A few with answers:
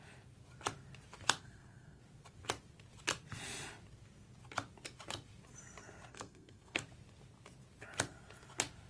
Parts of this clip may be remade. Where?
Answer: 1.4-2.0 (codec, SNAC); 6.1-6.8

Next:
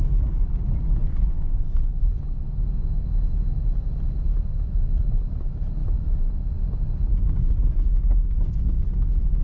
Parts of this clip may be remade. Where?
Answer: 1.0-2.3 (vocoder, Vocos)

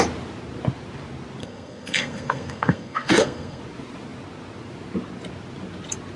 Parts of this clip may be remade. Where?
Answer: 1.4-3.6 (codec, SNAC)

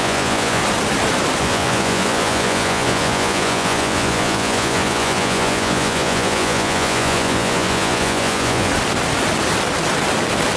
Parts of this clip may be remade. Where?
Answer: 0.0-0.6 (vocoder, Vocos); 1.4-8.7

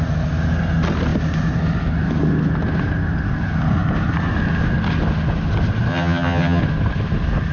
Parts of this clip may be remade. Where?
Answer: 5.9-6.6 (vocoder, HiFi-GAN)

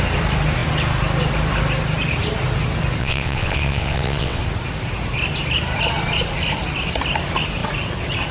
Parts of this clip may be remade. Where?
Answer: 3.0-4.4 (vocoder, WaveNeXt)